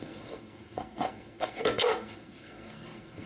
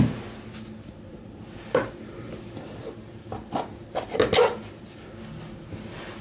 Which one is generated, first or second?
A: first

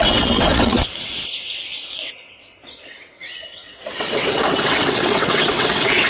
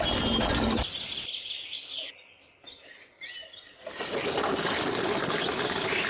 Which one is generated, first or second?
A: first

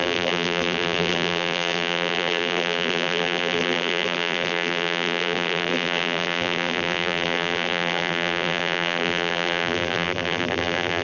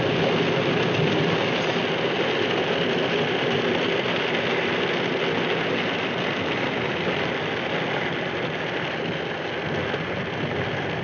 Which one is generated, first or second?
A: first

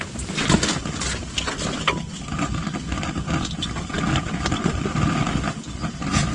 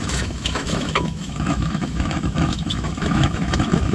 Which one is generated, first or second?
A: second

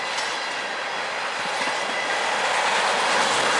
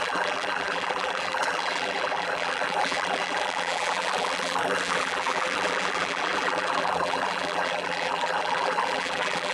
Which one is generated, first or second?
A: second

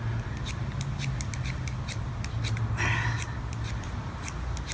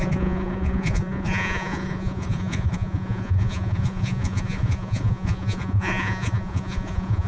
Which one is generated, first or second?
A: second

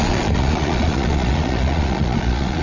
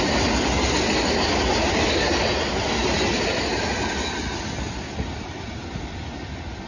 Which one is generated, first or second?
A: first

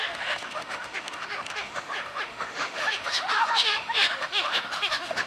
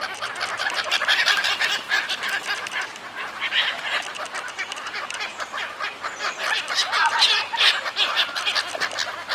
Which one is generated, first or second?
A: first